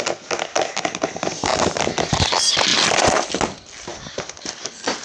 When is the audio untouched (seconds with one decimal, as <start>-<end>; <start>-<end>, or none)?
0.0-5.0